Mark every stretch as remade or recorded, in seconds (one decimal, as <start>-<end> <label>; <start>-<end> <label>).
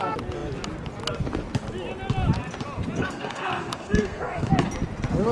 0.0-3.0 recorded; 3.0-4.5 remade; 4.5-5.3 recorded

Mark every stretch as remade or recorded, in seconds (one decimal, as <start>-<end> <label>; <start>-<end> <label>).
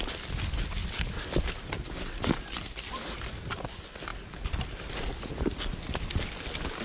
0.0-0.8 recorded; 0.8-2.7 remade; 2.7-6.8 recorded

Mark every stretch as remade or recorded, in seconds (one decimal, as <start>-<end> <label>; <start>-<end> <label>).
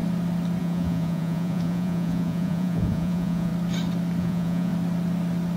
0.0-0.6 recorded; 0.6-3.5 remade; 3.5-4.2 recorded; 4.2-4.7 remade; 4.7-5.6 recorded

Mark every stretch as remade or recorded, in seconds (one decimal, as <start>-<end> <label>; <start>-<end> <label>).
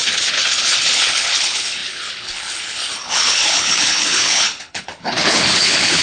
0.0-6.0 remade